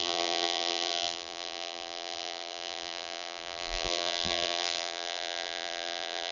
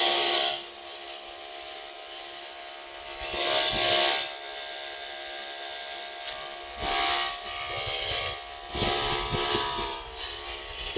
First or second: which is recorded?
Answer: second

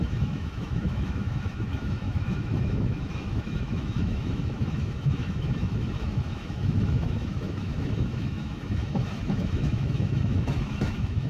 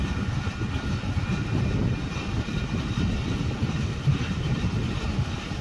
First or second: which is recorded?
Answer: second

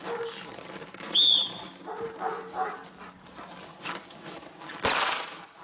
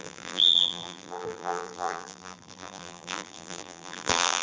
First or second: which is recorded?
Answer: first